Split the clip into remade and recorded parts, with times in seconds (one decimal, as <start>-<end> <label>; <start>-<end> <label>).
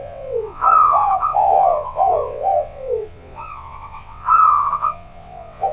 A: 0.0-5.7 remade